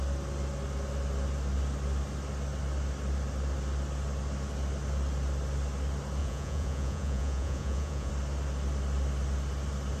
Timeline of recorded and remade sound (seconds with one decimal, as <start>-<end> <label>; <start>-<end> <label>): 0.0-6.2 recorded; 6.2-8.1 remade; 8.1-10.0 recorded